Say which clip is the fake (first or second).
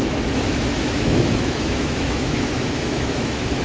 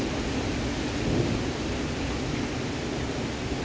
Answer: first